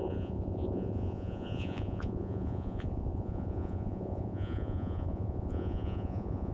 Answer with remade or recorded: remade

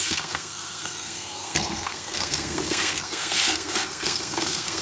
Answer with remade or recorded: remade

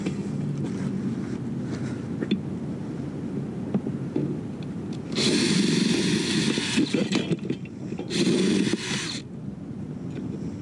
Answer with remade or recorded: recorded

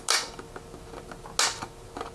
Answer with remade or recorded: recorded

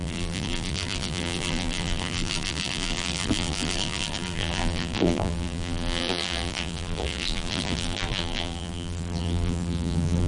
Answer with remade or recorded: remade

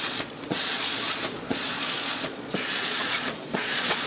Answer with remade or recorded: remade